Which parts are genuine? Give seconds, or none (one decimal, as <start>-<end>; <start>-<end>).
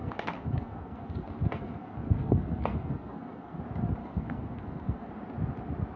3.6-4.0; 5.1-6.0